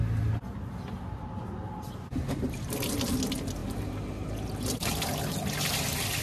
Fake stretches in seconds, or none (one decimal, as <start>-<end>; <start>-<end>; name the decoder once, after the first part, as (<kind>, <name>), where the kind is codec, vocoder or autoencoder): none